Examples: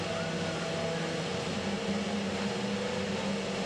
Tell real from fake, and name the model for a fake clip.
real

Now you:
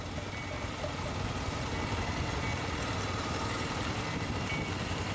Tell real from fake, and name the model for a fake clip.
real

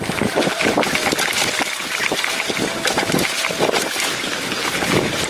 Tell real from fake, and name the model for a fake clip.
fake, vocoder, BigVGAN v2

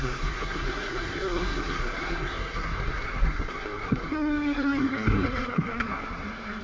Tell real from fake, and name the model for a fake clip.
fake, codec, SNAC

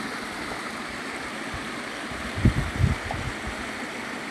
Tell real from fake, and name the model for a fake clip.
real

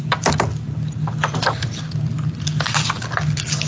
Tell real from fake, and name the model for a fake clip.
real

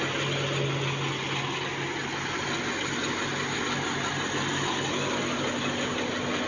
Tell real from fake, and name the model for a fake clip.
real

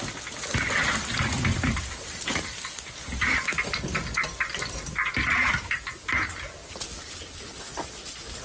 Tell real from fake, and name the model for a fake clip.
real